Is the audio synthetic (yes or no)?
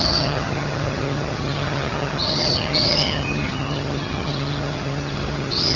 yes